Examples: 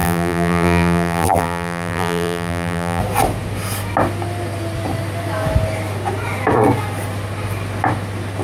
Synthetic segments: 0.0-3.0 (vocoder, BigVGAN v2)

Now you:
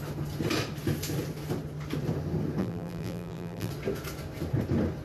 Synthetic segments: 2.6-3.7 (vocoder, BigVGAN v2)

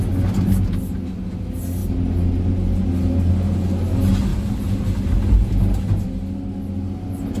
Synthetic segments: 4.3-5.5 (vocoder, BigVGAN v2)

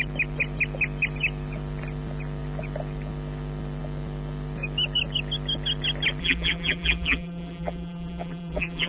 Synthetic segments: 6.2-8.9 (vocoder, BigVGAN v2)

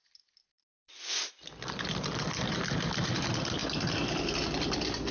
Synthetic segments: 0.0-3.6 (vocoder, BigVGAN v2)

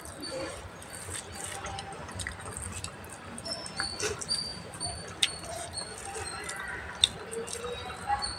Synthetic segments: 4.5-5.4 (vocoder, BigVGAN v2)

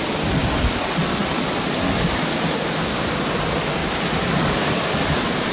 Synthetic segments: 3.8-4.5 (vocoder, BigVGAN v2)

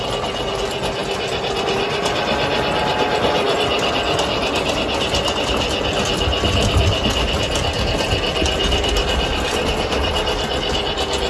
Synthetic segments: 1.0-4.7 (vocoder, BigVGAN v2); 8.3-10.2